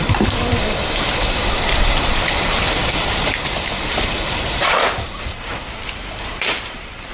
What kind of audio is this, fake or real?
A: fake